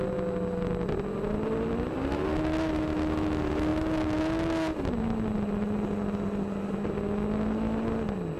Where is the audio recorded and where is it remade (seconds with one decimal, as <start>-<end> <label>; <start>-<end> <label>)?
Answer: 0.0-8.4 recorded